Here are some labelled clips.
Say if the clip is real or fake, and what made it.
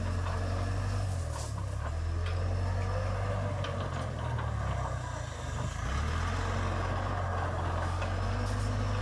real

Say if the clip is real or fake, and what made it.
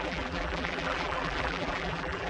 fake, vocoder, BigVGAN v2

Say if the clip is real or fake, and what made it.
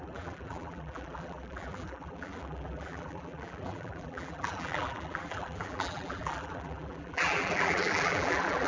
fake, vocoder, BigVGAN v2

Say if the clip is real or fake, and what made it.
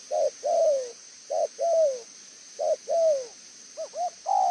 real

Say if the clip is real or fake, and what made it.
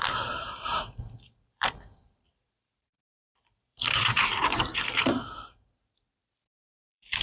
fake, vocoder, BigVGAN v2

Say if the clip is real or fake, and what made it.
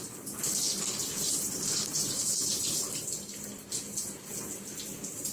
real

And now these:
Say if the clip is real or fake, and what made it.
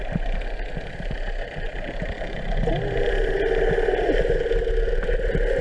real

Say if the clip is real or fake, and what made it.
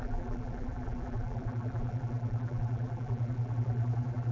fake, vocoder, BigVGAN v2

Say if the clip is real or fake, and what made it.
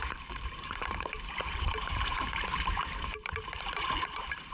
fake, vocoder, BigVGAN v2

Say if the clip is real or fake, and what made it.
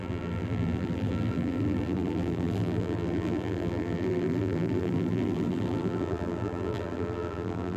fake, vocoder, BigVGAN v2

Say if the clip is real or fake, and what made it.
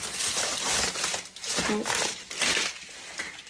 real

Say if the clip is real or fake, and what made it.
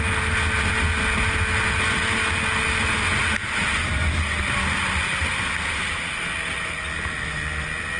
real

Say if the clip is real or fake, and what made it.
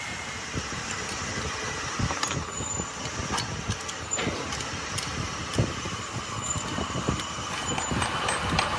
real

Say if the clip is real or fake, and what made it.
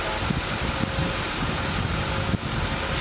real